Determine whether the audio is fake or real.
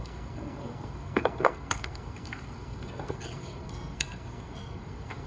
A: fake